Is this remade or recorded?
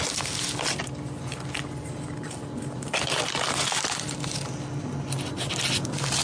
recorded